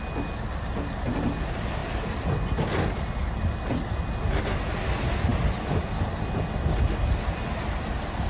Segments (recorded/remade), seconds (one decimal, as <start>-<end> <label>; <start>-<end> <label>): 0.0-8.3 recorded